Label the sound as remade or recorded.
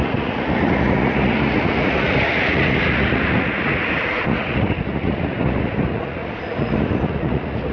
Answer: remade